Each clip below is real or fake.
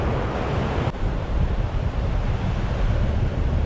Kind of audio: real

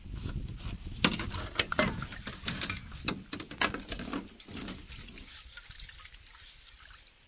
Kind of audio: real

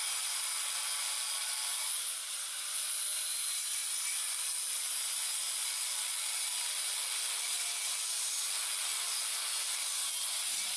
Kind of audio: real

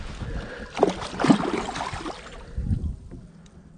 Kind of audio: real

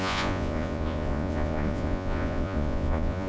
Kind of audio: fake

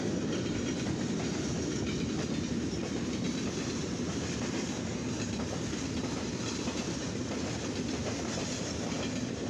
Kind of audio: real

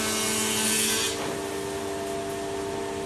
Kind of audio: real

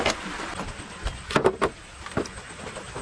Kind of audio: real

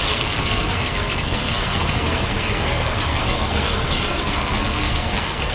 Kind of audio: fake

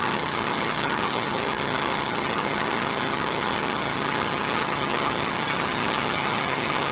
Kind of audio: fake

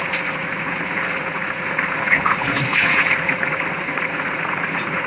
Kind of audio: fake